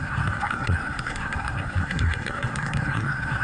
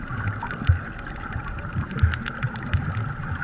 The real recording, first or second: second